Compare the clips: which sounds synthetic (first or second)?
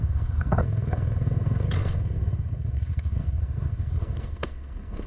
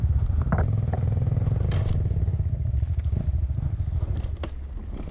first